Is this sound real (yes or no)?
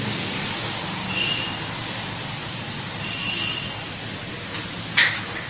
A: yes